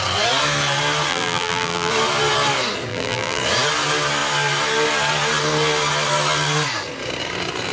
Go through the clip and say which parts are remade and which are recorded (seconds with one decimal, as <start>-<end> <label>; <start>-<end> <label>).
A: 0.0-1.1 recorded; 1.1-1.9 remade; 1.9-2.9 recorded; 2.9-3.4 remade; 3.4-7.7 recorded